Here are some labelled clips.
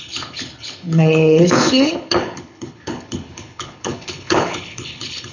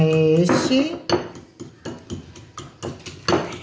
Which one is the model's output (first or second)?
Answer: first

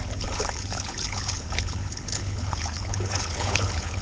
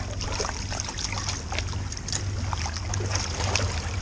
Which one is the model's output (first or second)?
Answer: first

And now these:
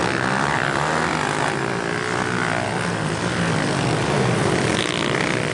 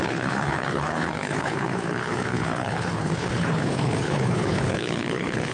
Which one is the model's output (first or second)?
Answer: second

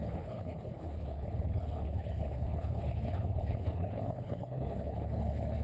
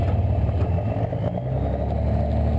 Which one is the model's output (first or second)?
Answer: first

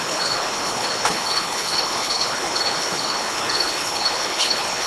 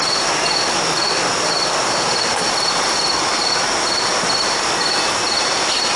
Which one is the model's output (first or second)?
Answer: first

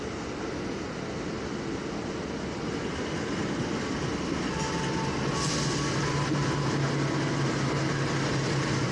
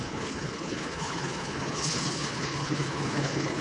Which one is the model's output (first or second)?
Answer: second